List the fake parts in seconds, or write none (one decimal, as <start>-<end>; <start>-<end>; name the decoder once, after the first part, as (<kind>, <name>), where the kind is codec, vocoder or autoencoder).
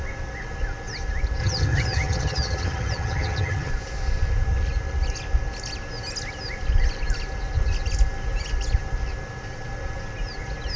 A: 1.4-3.7 (vocoder, HiFi-GAN)